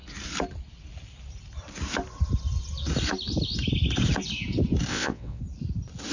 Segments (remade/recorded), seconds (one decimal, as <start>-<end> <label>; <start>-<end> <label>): 0.0-4.9 recorded; 4.9-5.4 remade; 5.4-6.1 recorded